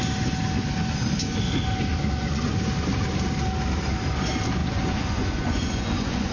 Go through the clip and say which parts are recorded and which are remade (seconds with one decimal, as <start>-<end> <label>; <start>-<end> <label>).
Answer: 0.0-1.9 recorded; 1.9-2.5 remade; 2.5-4.6 recorded; 4.6-6.3 remade